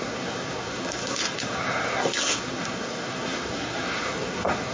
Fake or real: fake